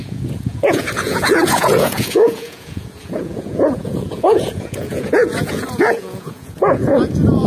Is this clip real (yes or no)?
no